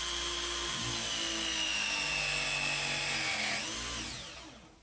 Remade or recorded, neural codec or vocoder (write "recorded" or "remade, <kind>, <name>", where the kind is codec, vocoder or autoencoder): recorded